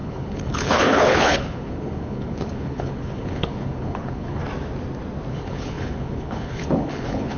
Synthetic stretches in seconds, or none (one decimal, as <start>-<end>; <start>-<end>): 0.0-4.4; 5.3-7.4